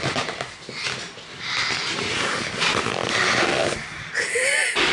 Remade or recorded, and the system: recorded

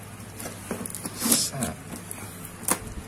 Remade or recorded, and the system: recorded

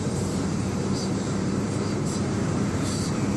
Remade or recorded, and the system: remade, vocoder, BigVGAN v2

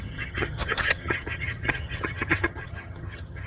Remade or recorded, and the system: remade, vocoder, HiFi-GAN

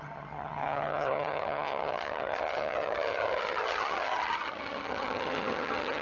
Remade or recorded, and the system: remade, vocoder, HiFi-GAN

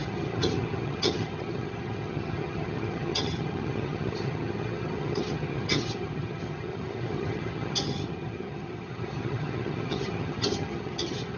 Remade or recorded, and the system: remade, vocoder, HiFi-GAN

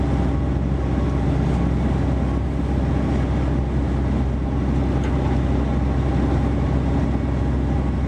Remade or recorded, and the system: recorded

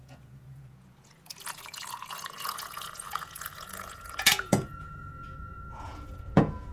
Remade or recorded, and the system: remade, vocoder, Vocos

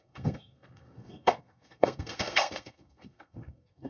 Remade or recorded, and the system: remade, codec, SNAC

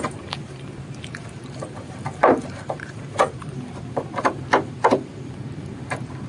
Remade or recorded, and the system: remade, vocoder, BigVGAN v2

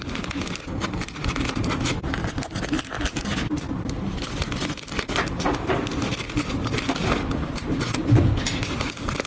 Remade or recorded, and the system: recorded